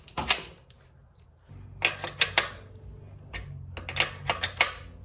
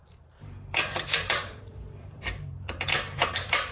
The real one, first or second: first